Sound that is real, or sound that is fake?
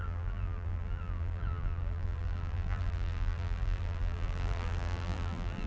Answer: fake